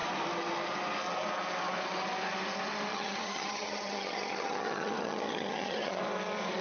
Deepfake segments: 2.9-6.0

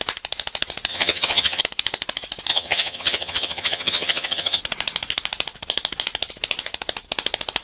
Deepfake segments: 0.9-1.6; 2.5-4.6

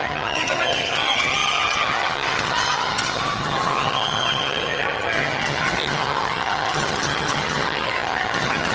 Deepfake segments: 0.0-8.7

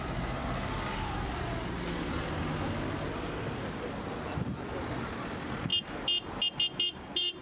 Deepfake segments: none

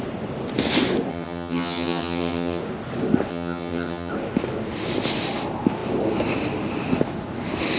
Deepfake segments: 1.1-2.6; 3.3-4.1

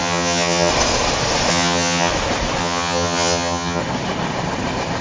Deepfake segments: 0.0-0.7; 1.5-2.1; 2.6-3.8